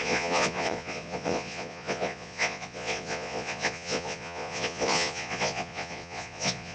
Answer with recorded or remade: remade